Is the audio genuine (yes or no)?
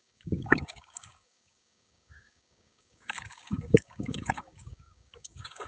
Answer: no